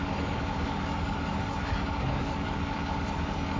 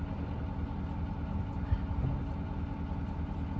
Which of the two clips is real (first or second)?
second